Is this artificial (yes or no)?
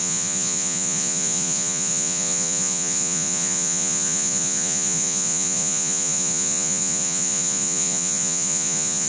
yes